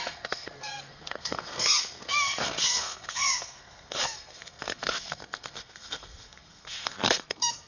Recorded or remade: remade